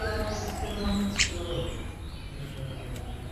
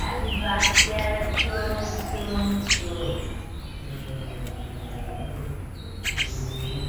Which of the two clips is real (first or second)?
second